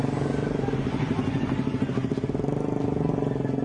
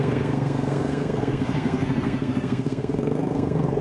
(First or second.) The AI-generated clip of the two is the second